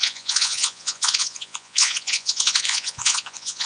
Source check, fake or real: fake